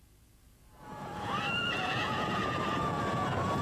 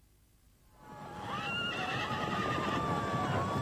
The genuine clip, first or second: second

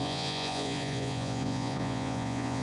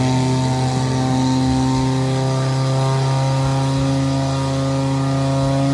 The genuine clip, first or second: second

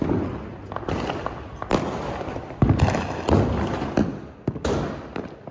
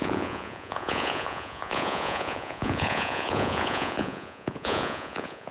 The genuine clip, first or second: first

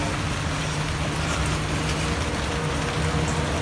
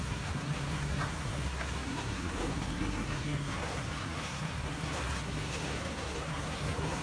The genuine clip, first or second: first